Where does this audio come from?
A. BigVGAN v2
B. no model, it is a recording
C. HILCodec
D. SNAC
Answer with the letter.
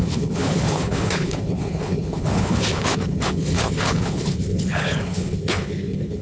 C